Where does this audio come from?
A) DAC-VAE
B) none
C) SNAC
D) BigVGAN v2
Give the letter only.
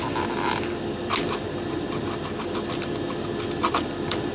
B